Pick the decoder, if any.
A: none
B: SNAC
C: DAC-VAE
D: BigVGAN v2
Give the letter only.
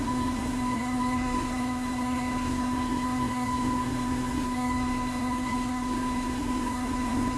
B